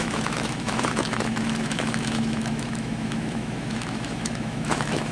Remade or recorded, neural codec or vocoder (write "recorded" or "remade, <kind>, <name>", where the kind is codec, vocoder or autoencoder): remade, autoencoder, DAC-VAE